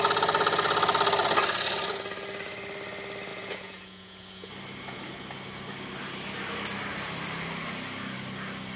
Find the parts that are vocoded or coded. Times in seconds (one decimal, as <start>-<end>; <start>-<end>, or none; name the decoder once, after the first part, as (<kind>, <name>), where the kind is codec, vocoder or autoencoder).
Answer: 3.3-4.5 (vocoder, Vocos)